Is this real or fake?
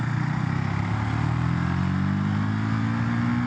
real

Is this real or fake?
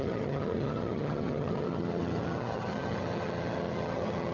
fake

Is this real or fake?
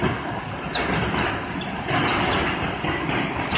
real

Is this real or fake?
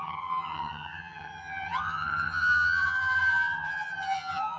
fake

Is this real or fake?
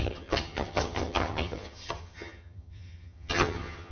fake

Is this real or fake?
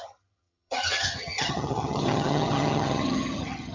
fake